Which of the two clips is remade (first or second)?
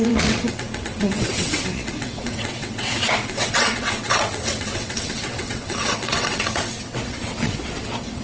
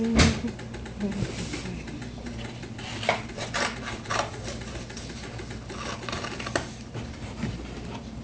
first